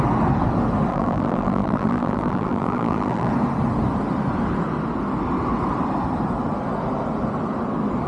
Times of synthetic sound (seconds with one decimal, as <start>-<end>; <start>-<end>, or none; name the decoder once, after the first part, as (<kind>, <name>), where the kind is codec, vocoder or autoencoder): 0.9-3.3 (vocoder, BigVGAN v2)